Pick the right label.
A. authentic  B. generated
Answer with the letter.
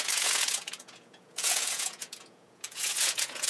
B